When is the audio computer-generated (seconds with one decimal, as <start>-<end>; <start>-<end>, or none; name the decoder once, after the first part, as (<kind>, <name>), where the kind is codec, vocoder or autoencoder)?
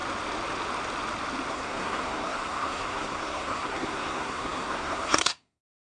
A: 1.5-6.0 (codec, SNAC)